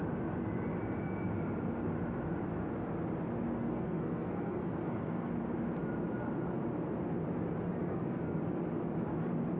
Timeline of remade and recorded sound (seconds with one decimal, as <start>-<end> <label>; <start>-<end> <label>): 0.0-3.6 recorded; 3.6-5.3 remade; 5.3-7.8 recorded; 7.8-8.4 remade; 8.4-9.6 recorded